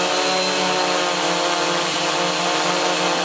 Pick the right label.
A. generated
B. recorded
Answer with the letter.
B